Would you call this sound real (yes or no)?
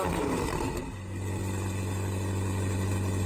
yes